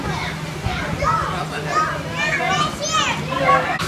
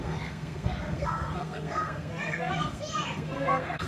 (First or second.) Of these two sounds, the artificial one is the second